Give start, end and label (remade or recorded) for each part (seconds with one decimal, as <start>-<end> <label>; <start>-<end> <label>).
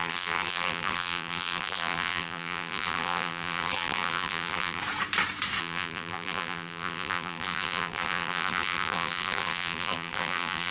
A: 0.0-4.8 remade; 4.8-5.6 recorded; 5.6-10.7 remade